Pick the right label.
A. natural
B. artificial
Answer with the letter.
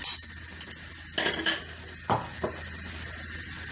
A